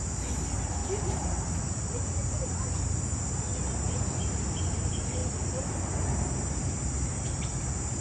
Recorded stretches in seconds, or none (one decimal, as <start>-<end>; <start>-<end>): 0.0-8.0